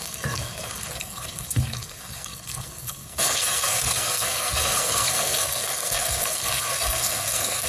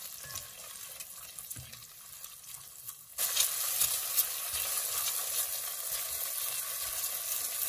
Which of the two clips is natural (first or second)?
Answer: second